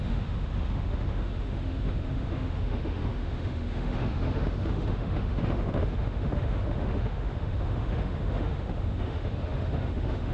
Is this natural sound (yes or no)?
no